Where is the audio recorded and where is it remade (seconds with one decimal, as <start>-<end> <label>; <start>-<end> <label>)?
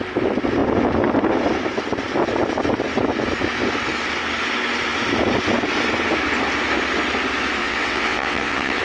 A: 0.0-7.6 recorded; 7.6-8.8 remade